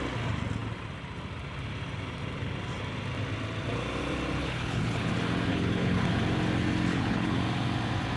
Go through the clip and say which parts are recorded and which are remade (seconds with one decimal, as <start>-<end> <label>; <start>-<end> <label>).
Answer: 0.0-4.4 recorded; 4.4-5.1 remade; 5.1-5.5 recorded; 5.5-6.1 remade; 6.1-6.9 recorded; 6.9-7.4 remade; 7.4-8.2 recorded